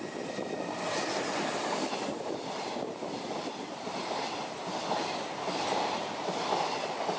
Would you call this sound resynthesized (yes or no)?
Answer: no